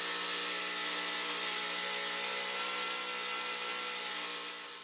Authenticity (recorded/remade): recorded